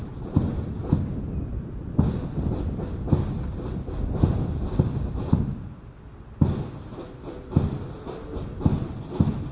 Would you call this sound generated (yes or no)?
no